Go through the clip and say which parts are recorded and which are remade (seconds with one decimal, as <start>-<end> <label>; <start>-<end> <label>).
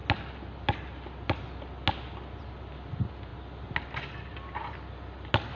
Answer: 0.0-5.6 recorded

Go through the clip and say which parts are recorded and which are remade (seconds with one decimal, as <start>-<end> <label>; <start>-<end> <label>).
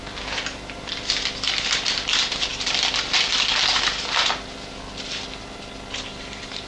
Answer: 0.0-6.7 recorded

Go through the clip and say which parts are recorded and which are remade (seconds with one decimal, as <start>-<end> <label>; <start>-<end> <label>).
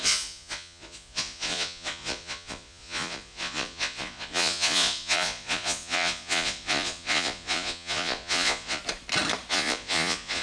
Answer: 0.0-8.8 remade; 8.8-9.5 recorded; 9.5-10.4 remade